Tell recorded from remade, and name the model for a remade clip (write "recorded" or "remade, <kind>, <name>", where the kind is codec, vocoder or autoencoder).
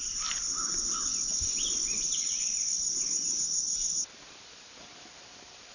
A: recorded